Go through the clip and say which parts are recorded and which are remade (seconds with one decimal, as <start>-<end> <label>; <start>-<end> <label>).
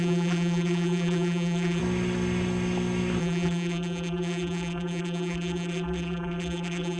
0.0-1.8 remade; 1.8-3.2 recorded; 3.2-7.0 remade